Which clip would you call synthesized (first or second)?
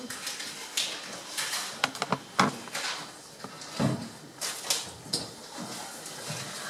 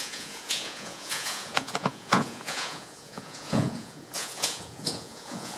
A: second